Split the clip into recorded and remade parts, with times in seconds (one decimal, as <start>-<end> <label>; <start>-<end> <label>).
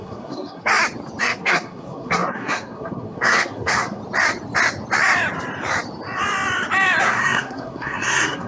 0.0-0.7 remade; 0.7-1.2 recorded; 1.2-4.0 remade; 4.0-7.0 recorded; 7.0-8.5 remade